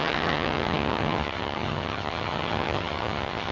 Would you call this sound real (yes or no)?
no